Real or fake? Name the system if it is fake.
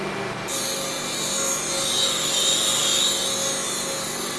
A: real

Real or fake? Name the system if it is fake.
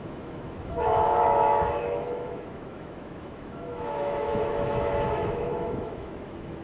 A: fake, autoencoder, DAC-VAE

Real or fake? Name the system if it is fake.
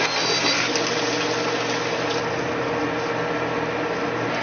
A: real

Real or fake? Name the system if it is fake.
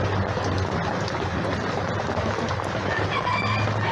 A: real